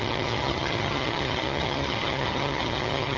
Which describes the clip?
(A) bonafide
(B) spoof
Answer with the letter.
B